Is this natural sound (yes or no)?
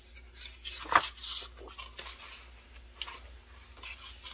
yes